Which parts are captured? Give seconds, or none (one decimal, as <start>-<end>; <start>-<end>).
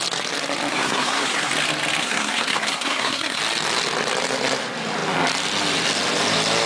0.0-0.7; 1.5-2.0; 3.4-6.7